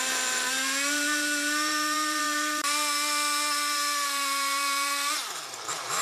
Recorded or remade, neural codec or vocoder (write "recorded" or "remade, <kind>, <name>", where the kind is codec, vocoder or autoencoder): remade, vocoder, BigVGAN v2